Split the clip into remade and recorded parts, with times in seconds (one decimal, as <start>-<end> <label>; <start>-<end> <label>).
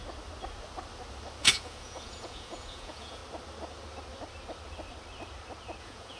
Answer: 0.0-1.4 recorded; 1.4-3.2 remade; 3.2-5.8 recorded; 5.8-6.2 remade